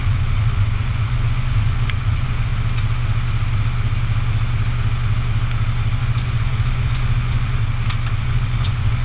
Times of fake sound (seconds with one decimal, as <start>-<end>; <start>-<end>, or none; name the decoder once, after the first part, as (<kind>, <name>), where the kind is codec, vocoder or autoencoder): 0.0-2.5 (vocoder, Vocos); 6.0-7.6; 8.2-9.0